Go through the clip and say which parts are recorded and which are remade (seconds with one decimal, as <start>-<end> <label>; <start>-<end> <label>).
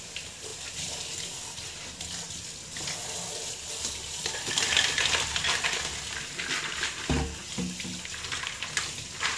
0.0-9.4 recorded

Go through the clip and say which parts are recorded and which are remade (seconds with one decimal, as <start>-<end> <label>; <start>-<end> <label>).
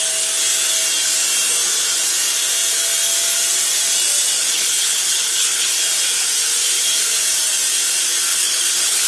0.0-4.4 recorded; 4.4-5.8 remade; 5.8-8.3 recorded; 8.3-9.1 remade